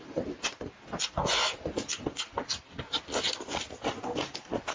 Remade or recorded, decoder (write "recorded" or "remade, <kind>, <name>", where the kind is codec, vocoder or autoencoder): recorded